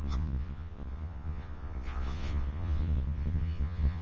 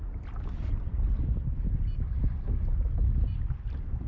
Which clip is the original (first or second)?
second